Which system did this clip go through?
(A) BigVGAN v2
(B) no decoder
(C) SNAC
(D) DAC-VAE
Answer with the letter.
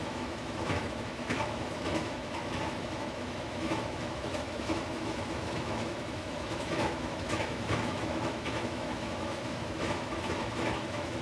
D